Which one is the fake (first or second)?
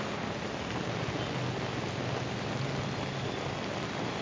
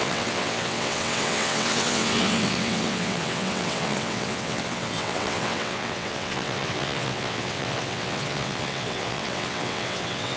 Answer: second